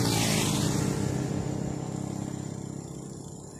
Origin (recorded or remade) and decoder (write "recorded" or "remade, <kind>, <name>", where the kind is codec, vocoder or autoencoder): recorded